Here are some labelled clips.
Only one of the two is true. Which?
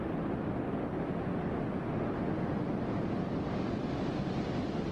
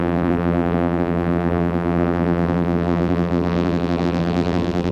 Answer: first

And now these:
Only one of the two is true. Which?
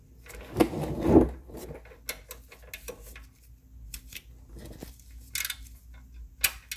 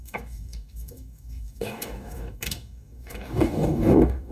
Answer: first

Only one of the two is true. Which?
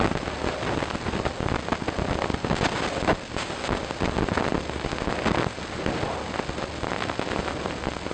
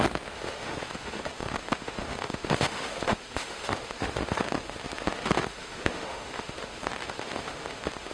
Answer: first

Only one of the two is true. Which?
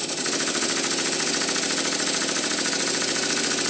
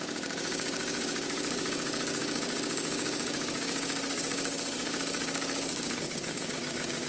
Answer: first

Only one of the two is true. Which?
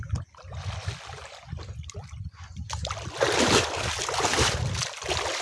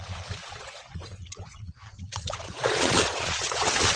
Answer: first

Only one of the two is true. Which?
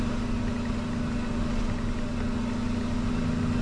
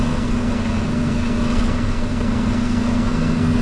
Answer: first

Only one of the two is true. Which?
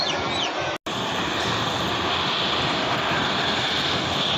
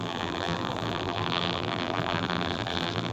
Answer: first